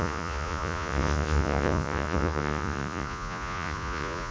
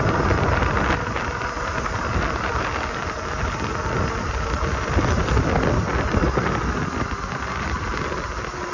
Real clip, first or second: second